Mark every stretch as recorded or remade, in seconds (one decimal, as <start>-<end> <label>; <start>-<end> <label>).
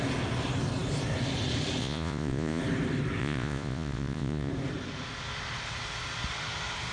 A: 0.0-1.8 recorded; 1.8-2.6 remade; 2.6-3.2 recorded; 3.2-4.5 remade; 4.5-6.9 recorded